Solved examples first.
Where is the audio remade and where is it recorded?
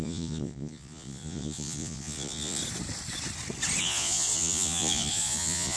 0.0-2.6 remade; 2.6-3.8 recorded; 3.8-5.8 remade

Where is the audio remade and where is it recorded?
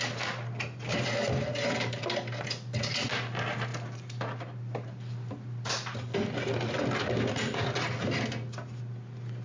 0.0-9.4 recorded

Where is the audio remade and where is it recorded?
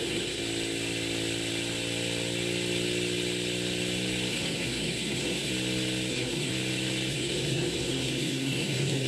0.0-0.4 remade; 0.4-4.3 recorded; 4.3-5.5 remade; 5.5-6.1 recorded; 6.1-6.5 remade; 6.5-7.1 recorded; 7.1-9.1 remade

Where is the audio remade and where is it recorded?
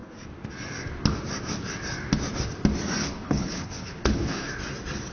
0.0-3.0 recorded; 3.0-4.5 remade; 4.5-5.1 recorded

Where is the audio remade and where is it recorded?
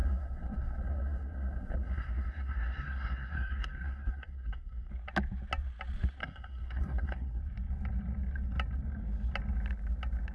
0.0-4.9 remade; 4.9-6.2 recorded; 6.2-7.4 remade; 7.4-10.3 recorded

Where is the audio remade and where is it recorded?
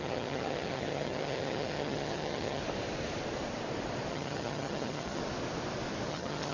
0.0-2.6 remade; 2.6-4.1 recorded; 4.1-5.2 remade; 5.2-6.1 recorded; 6.1-6.5 remade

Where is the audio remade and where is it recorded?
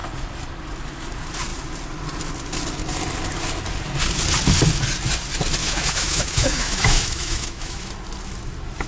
0.0-5.6 recorded; 5.6-7.9 remade; 7.9-8.9 recorded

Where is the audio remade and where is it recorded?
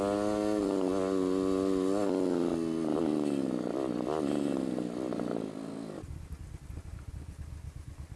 0.0-8.2 recorded